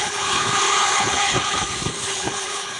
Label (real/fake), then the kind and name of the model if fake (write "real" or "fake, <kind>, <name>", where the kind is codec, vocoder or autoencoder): fake, codec, HILCodec